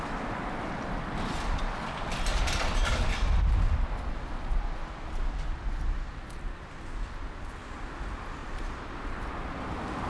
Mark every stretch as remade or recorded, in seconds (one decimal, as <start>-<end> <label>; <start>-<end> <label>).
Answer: 0.0-8.4 recorded; 8.4-9.3 remade; 9.3-10.1 recorded